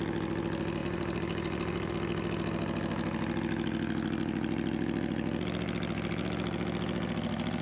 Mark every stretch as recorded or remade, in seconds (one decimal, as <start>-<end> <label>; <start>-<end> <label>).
0.0-0.8 recorded; 0.8-1.9 remade; 1.9-7.6 recorded